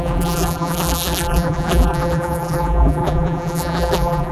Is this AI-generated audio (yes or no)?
yes